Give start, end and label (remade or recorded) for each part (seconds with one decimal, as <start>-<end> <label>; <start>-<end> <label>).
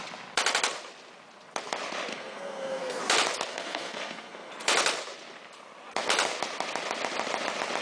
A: 0.0-2.1 recorded; 2.1-3.0 remade; 3.0-3.5 recorded; 3.5-4.5 remade; 4.5-7.8 recorded